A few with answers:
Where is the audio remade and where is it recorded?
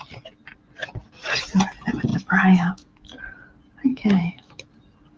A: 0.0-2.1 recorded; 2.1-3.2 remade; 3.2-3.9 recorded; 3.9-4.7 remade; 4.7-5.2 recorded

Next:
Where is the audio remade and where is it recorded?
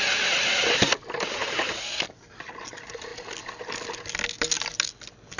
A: 0.0-5.4 recorded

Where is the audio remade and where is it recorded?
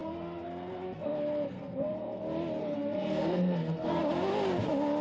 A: 0.0-2.2 remade; 2.2-2.6 recorded; 2.6-4.0 remade; 4.0-5.0 recorded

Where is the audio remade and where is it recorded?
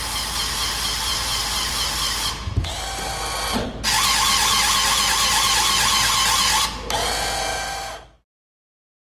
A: 0.0-9.0 recorded